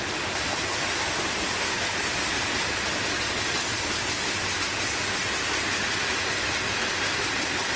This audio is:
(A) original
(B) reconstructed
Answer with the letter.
A